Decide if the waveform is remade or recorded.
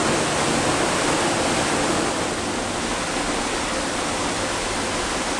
recorded